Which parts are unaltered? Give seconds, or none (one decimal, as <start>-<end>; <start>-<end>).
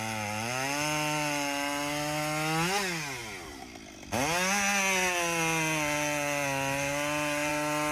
0.0-7.9